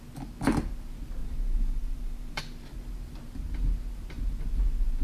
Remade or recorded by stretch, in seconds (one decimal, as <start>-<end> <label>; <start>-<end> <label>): 0.0-1.2 recorded; 1.2-2.4 remade; 2.4-5.0 recorded